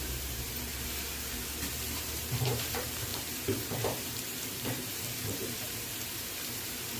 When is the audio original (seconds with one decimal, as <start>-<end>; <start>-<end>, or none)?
0.7-1.6